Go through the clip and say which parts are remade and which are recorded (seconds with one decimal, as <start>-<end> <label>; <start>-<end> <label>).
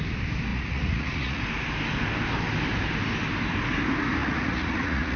0.0-0.5 recorded; 0.5-1.4 remade; 1.4-4.2 recorded; 4.2-5.2 remade